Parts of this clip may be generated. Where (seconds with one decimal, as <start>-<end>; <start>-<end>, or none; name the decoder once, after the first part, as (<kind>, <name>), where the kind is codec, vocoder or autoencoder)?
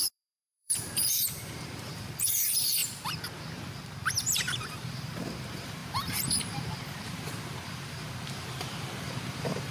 0.0-2.8 (vocoder, BigVGAN v2); 4.3-9.7